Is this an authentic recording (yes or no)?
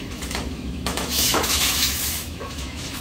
no